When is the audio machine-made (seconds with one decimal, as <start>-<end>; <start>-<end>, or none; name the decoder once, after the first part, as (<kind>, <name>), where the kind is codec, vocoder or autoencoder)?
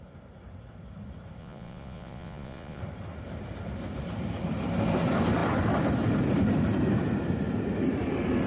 1.4-2.8 (vocoder, Vocos)